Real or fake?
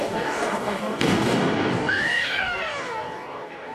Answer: fake